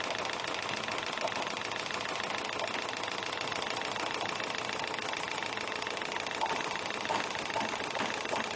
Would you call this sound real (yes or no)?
yes